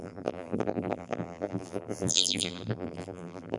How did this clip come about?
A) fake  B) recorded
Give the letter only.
A